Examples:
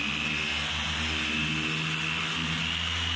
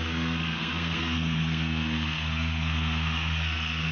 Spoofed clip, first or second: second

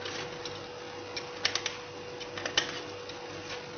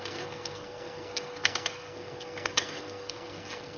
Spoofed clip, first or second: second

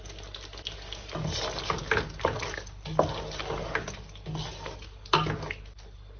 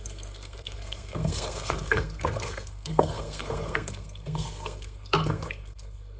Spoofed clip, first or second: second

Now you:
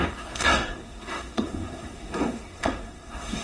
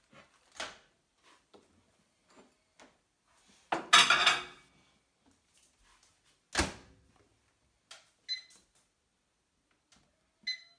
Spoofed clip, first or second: first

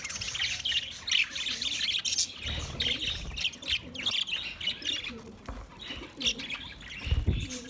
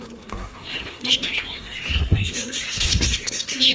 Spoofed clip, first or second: second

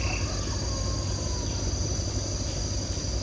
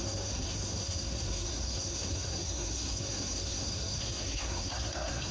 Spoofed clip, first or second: second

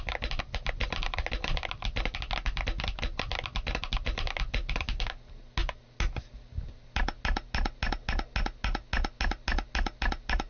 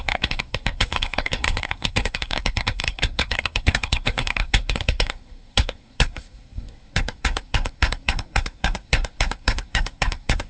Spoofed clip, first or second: second